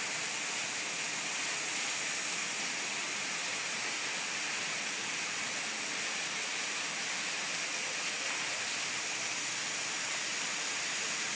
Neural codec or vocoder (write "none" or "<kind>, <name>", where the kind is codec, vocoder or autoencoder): none